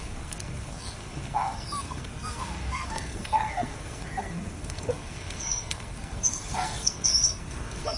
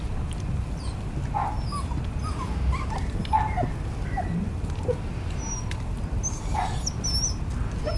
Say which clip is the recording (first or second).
second